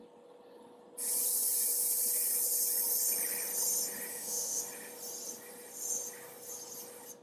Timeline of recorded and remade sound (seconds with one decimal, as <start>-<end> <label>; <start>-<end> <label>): 0.0-4.1 recorded; 4.1-4.6 remade; 4.6-7.2 recorded